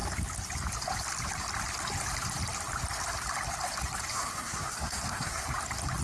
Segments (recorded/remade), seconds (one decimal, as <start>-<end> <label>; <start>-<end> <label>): 0.0-4.1 recorded; 4.1-5.4 remade; 5.4-6.0 recorded